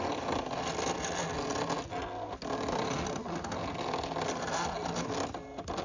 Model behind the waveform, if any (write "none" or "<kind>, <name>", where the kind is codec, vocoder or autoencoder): none